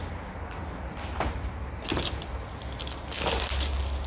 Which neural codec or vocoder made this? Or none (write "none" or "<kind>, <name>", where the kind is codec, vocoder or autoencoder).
none